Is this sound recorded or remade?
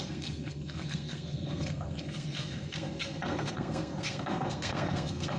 remade